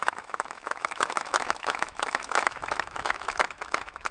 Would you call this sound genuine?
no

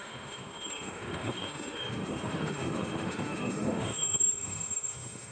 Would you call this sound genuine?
no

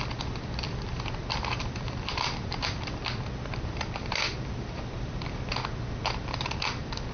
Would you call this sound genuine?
no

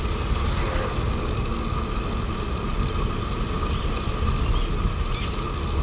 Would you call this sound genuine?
yes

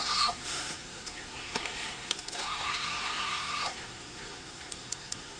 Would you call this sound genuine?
no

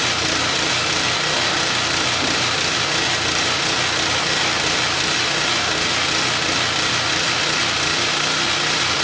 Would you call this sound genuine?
yes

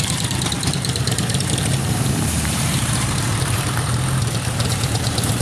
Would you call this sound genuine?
no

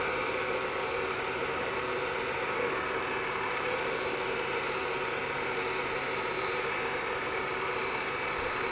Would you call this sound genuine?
yes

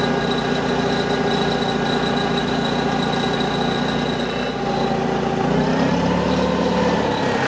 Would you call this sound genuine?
yes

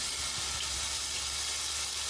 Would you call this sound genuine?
yes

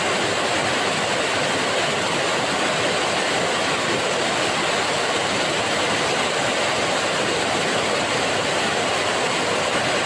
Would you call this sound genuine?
yes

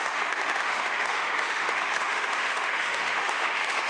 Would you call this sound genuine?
no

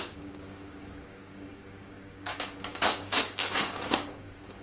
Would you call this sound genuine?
no